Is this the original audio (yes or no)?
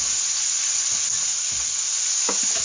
yes